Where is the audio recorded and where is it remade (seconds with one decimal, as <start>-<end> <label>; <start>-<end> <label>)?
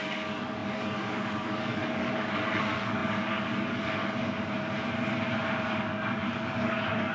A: 0.0-4.0 remade; 4.0-5.6 recorded; 5.6-7.1 remade